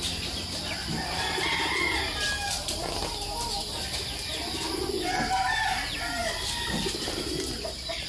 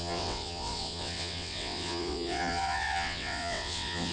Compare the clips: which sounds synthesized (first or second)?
second